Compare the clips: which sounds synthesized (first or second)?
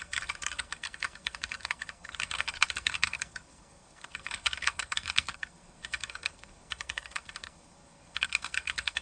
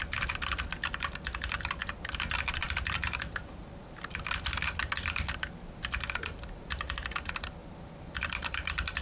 first